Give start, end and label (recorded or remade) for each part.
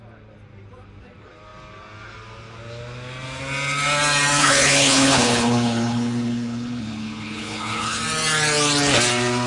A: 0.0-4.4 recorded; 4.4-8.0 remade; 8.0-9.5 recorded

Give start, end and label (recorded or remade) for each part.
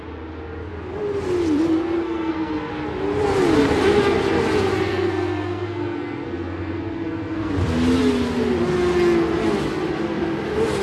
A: 0.0-2.0 recorded; 2.0-2.7 remade; 2.7-4.9 recorded; 4.9-7.5 remade; 7.5-10.8 recorded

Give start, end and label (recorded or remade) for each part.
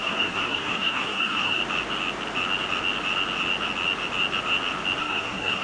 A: 0.0-1.6 remade; 1.6-5.0 recorded; 5.0-5.6 remade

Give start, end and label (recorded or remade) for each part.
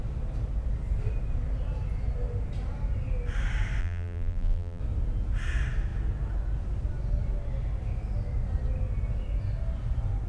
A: 0.0-3.8 recorded; 3.8-4.8 remade; 4.8-10.3 recorded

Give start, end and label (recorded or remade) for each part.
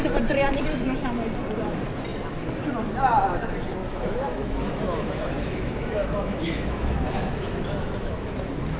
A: 0.0-3.8 recorded; 3.8-8.3 remade; 8.3-8.8 recorded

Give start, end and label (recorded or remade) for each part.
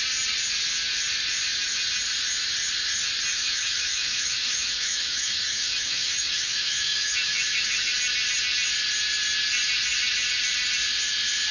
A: 0.0-3.3 recorded; 3.3-7.9 remade; 7.9-11.5 recorded